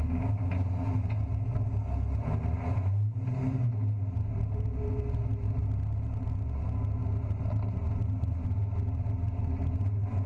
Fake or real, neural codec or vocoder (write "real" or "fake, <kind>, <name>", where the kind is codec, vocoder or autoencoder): real